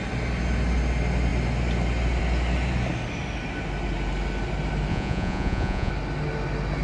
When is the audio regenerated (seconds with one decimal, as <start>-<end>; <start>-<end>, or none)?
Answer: 4.9-5.9